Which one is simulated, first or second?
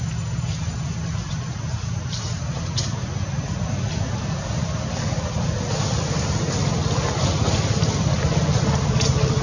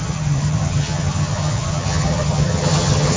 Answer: second